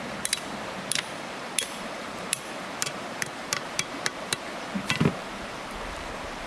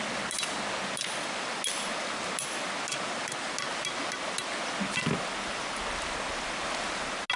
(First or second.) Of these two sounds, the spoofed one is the first